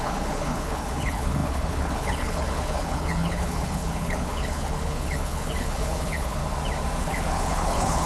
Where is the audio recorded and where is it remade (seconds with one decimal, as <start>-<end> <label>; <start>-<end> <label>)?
0.0-6.4 remade; 6.4-7.0 recorded; 7.0-8.1 remade